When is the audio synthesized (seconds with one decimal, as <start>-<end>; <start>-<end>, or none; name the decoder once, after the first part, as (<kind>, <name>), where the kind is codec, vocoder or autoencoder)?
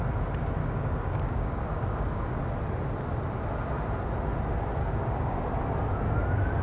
0.6-2.4 (codec, DAC); 4.8-5.4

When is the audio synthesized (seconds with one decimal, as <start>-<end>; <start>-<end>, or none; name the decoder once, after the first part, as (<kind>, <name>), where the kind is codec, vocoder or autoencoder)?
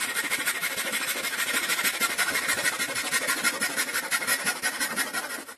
0.6-2.4 (autoencoder, DAC-VAE); 4.3-4.9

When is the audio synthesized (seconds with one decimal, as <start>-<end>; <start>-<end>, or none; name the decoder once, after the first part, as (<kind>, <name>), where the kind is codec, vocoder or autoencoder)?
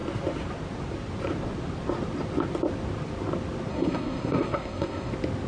3.7-5.1 (codec, SNAC)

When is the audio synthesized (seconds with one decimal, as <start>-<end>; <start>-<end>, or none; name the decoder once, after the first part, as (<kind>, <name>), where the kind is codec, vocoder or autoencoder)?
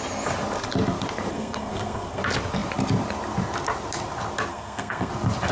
1.3-2.2 (codec, SNAC); 4.5-5.1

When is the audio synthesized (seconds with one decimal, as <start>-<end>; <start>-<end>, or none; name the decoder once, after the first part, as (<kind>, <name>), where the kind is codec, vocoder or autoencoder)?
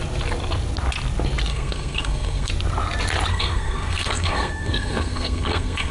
1.5-2.5 (codec, SNAC); 3.3-5.9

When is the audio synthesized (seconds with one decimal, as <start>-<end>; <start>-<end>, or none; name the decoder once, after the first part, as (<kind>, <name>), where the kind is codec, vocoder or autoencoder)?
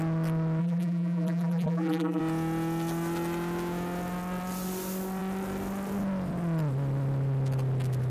0.6-2.2 (vocoder, BigVGAN v2)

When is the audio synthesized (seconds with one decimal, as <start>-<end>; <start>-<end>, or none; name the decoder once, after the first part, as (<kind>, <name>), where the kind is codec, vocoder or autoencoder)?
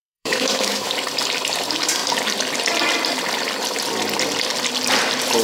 0.0-0.9 (autoencoder, DAC-VAE)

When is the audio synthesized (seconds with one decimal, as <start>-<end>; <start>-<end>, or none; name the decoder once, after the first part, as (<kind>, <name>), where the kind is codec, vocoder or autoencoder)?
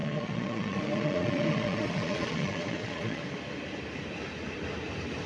0.0-3.2 (vocoder, Vocos)